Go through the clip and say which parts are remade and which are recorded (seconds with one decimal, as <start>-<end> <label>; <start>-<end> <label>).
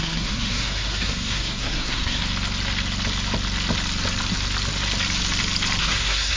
0.0-2.2 remade; 2.2-5.8 recorded; 5.8-6.4 remade